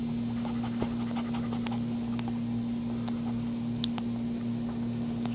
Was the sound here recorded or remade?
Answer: recorded